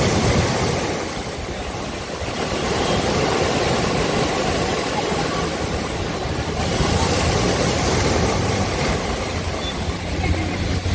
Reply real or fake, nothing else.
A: real